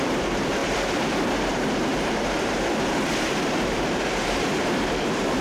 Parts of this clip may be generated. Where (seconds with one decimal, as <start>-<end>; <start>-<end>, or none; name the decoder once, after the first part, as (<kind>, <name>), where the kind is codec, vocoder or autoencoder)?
0.0-5.4 (vocoder, BigVGAN v2)